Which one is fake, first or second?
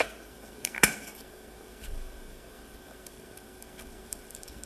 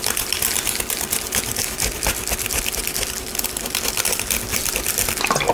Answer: first